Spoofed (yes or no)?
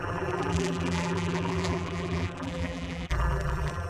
yes